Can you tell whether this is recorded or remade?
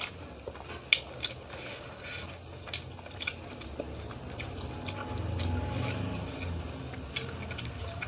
recorded